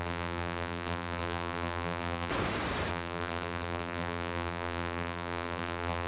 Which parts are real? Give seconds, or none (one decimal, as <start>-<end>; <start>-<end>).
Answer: 2.3-2.9